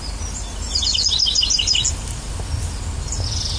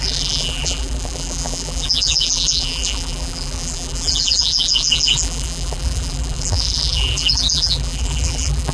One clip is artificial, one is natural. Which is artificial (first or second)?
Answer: second